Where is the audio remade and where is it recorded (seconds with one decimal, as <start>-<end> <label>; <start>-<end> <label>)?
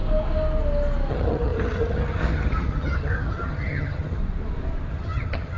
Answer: 0.0-1.1 recorded; 1.1-4.2 remade; 4.2-4.9 recorded; 4.9-5.6 remade